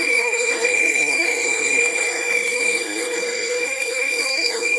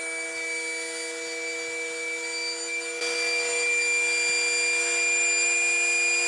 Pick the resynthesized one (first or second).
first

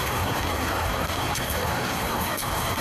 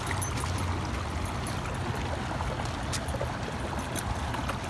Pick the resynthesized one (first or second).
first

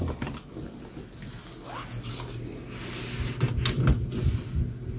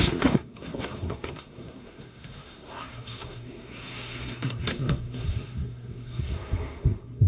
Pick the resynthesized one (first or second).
second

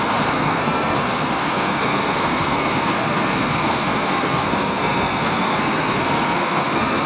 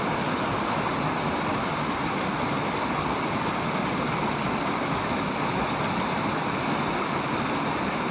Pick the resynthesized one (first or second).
first